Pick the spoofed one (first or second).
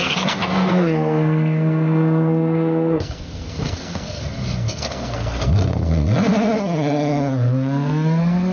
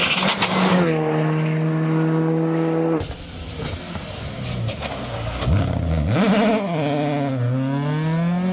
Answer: first